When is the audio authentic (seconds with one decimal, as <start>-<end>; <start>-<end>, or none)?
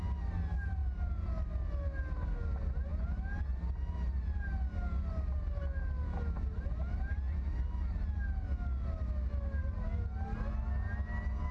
0.0-11.5